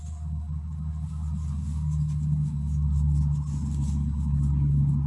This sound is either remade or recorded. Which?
recorded